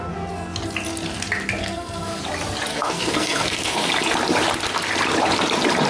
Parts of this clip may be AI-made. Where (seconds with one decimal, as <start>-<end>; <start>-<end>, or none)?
1.6-2.2; 2.7-3.9